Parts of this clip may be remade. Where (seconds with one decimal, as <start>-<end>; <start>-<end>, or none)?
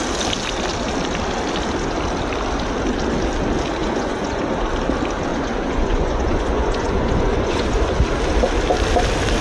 3.8-4.4; 5.3-7.8